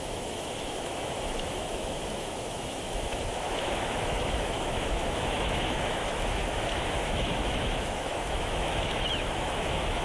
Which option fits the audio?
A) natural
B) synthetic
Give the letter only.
B